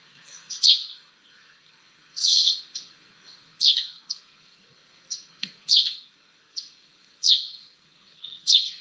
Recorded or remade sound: remade